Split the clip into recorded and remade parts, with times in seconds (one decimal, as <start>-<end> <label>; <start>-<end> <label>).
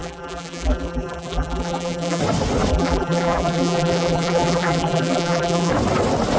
0.0-2.2 remade; 2.2-2.7 recorded; 2.7-5.7 remade; 5.7-6.4 recorded